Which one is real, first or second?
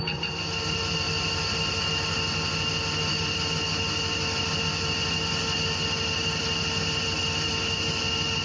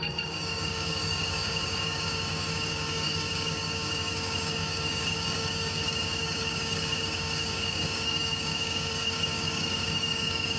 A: first